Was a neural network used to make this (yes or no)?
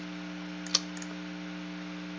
no